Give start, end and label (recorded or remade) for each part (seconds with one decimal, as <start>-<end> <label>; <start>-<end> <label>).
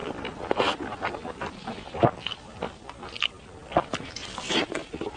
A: 0.0-5.2 recorded